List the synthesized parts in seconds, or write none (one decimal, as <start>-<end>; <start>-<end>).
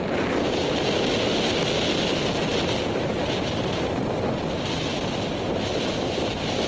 none